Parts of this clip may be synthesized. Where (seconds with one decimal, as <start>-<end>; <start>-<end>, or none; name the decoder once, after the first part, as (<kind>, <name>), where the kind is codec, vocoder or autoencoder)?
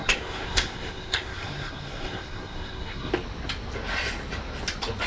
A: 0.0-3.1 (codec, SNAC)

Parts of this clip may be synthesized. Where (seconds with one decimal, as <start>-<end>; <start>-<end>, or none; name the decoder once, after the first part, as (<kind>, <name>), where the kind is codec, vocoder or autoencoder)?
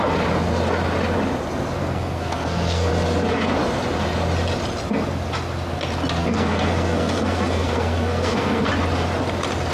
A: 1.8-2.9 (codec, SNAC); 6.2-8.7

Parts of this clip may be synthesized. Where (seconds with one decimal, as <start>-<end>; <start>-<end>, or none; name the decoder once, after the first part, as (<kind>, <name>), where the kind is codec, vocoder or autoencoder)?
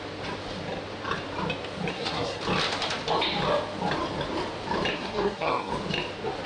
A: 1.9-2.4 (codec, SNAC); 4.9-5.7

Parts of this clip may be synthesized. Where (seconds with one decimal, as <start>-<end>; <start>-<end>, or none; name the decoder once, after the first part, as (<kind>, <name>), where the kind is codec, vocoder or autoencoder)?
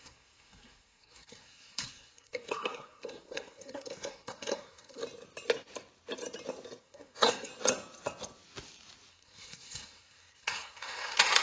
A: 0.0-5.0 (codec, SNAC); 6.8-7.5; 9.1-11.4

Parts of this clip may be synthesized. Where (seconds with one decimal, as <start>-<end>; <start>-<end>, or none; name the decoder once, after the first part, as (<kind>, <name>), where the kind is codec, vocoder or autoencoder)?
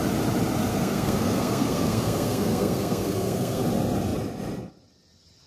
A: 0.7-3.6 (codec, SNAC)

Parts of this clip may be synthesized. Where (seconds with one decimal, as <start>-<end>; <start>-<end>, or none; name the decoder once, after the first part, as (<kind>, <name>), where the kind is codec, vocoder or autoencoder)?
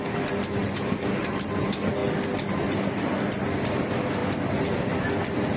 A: none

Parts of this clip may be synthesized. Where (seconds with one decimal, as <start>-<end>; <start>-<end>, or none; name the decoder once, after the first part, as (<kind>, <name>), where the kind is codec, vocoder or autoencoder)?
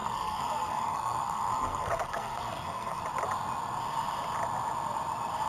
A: 0.0-3.0 (codec, SNAC)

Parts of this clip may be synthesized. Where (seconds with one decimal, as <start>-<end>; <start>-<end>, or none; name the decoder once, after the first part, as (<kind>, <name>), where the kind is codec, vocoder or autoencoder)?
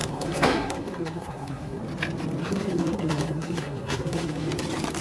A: 0.0-1.8 (codec, SNAC); 2.4-4.5